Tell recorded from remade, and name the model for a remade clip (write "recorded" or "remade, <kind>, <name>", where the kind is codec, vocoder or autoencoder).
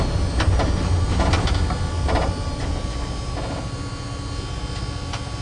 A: recorded